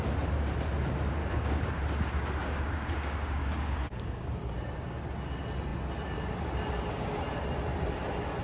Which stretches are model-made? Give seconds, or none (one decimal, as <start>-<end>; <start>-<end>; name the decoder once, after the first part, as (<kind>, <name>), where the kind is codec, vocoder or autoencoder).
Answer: 1.2-1.8 (codec, DAC); 2.4-4.4